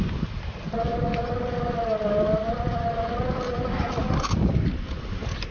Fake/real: real